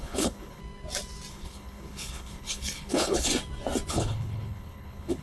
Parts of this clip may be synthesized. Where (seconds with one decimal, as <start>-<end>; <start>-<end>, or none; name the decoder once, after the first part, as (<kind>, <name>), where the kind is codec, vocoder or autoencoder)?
0.0-0.6 (codec, HILCodec); 1.3-3.3; 3.9-5.2